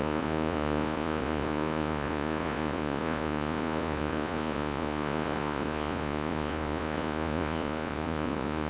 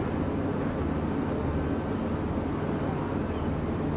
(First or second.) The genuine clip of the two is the second